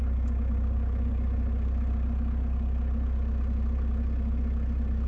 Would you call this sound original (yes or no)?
yes